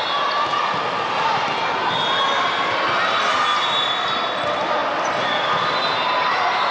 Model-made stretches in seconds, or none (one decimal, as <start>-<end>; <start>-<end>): none